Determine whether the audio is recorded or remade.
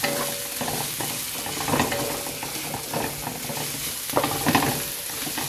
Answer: recorded